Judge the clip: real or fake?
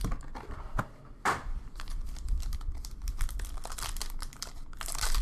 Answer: fake